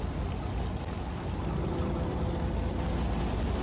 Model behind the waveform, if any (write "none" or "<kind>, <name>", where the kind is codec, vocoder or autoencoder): none